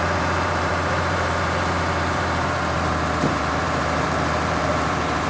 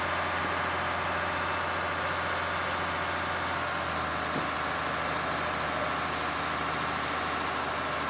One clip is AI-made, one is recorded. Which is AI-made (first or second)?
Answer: first